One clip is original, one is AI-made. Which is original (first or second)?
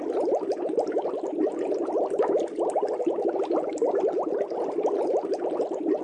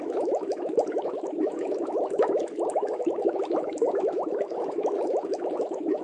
first